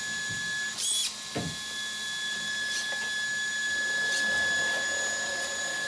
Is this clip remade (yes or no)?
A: no